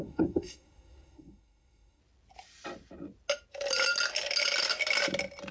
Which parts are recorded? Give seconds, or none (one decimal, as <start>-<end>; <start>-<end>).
2.0-5.5